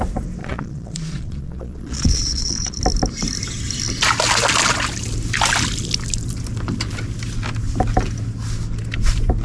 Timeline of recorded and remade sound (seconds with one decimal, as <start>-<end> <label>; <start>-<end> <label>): 0.0-0.4 recorded; 0.4-2.8 remade; 2.8-9.4 recorded